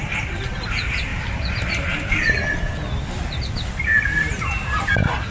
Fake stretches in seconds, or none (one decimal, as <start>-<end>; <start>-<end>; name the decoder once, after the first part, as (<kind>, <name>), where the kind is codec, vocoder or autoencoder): none